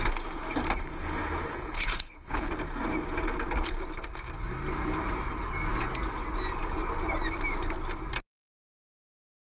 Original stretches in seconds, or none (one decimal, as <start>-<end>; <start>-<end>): 0.0-1.5; 2.5-9.6